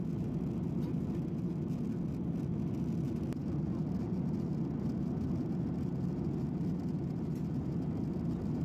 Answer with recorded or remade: recorded